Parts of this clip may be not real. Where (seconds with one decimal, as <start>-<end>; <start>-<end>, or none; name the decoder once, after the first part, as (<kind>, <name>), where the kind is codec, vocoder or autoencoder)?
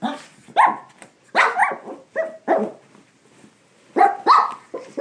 none